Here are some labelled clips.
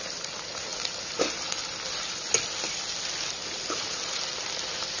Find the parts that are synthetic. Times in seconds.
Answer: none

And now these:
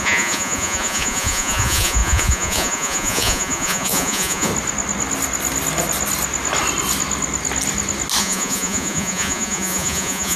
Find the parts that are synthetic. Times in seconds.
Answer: 0.0-4.5 (vocoder, Vocos); 8.2-10.4

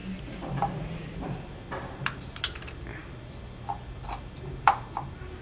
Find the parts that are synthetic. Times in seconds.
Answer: none